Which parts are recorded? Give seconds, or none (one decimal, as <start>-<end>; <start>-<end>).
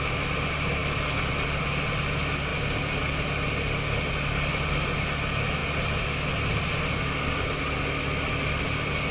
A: 0.0-9.1